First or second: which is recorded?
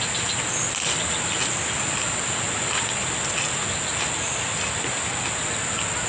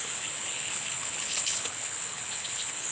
first